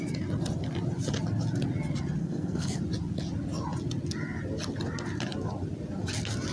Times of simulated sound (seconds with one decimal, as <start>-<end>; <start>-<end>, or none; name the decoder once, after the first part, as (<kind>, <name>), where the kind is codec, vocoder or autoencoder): 2.2-2.8 (codec, SNAC)